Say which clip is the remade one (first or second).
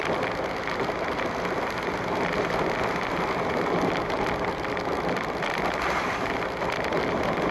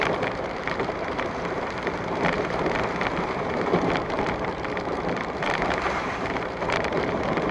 second